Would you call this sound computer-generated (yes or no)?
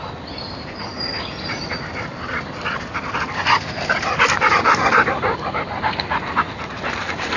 no